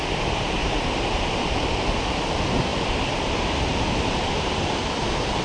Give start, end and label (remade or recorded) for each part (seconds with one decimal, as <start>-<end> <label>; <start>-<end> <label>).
0.0-0.6 recorded; 0.6-1.9 remade; 1.9-2.7 recorded; 2.7-4.6 remade; 4.6-5.4 recorded